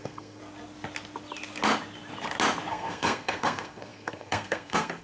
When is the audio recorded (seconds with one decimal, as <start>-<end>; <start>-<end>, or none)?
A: 0.4-2.7